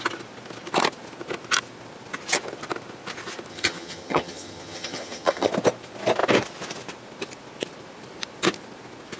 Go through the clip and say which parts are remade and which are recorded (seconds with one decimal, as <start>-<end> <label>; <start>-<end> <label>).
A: 0.0-3.5 recorded; 3.5-5.5 remade; 5.5-9.2 recorded